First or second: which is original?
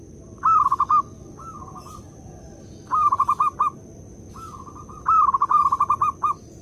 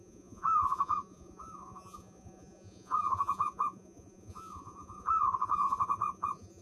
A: first